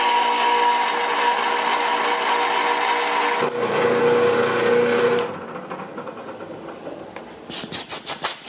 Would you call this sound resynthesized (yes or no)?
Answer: no